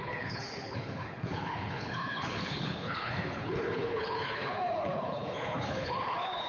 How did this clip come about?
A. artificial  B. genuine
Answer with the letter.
A